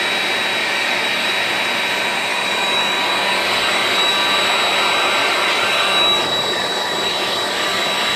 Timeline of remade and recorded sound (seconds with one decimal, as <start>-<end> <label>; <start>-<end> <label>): 0.0-0.6 recorded; 0.6-1.3 remade; 1.3-2.3 recorded; 2.3-4.1 remade; 4.1-5.2 recorded; 5.2-8.2 remade